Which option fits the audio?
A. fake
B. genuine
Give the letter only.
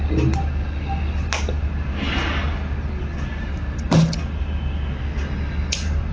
B